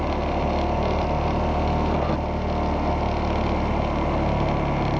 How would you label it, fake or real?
real